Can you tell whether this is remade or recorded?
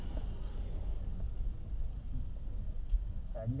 recorded